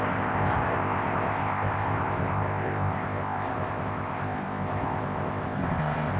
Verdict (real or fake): fake